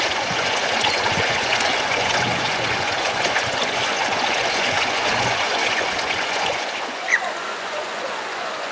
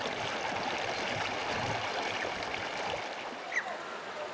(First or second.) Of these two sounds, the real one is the second